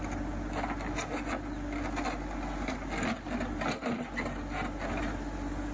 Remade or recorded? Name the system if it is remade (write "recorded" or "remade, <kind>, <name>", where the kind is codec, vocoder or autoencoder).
recorded